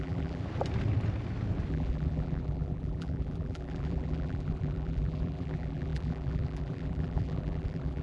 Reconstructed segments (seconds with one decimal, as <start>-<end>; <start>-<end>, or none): 0.0-0.4; 1.7-8.0

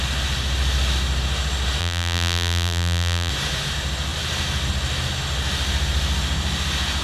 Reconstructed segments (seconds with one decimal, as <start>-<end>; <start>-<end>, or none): 1.8-3.3

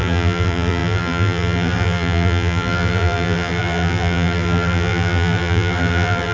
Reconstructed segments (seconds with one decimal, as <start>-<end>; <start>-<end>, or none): 0.0-6.3